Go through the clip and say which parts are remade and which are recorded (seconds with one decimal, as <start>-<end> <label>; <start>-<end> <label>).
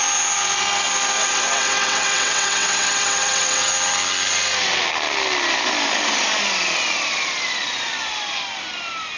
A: 0.0-1.2 recorded; 1.2-3.7 remade; 3.7-9.2 recorded